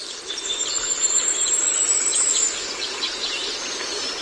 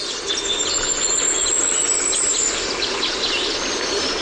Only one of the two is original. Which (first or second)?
second